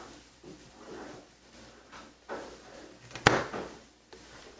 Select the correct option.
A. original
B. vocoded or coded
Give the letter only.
A